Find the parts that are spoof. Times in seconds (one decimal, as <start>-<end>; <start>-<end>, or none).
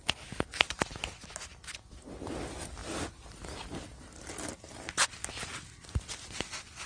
none